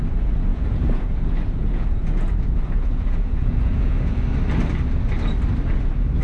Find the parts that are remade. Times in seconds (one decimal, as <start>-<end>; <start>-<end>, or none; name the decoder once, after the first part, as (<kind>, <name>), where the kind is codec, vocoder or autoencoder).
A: 0.5-4.2 (vocoder, Vocos)